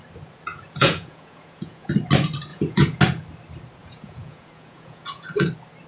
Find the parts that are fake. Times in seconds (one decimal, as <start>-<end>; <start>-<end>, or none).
0.5-1.9; 2.5-3.0; 3.8-5.5